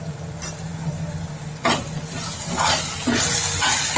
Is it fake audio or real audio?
real